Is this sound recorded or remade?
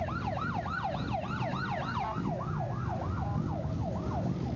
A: recorded